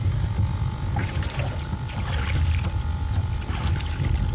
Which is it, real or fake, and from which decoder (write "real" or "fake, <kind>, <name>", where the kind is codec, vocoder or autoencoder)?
real